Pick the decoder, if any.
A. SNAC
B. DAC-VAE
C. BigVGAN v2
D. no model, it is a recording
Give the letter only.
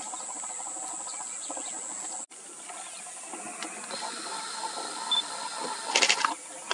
D